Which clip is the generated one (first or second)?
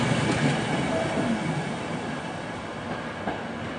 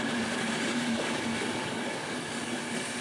second